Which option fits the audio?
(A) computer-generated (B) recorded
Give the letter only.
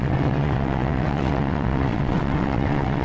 A